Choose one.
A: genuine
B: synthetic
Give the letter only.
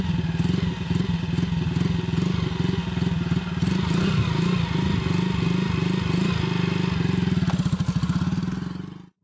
A